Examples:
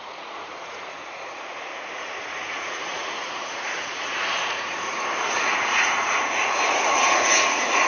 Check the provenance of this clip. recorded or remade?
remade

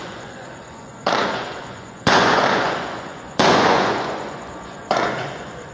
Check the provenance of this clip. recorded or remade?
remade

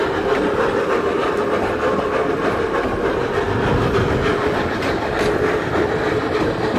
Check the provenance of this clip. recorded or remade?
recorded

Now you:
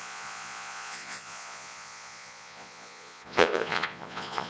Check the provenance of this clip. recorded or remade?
remade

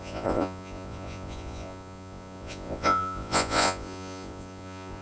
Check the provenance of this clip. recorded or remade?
remade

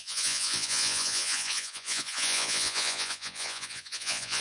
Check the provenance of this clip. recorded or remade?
remade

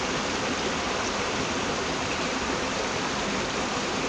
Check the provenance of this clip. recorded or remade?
recorded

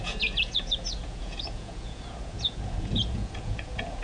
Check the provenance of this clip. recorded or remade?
remade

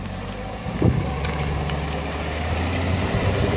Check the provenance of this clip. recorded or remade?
recorded